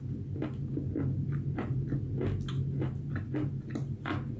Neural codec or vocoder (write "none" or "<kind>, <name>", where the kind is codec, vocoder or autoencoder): none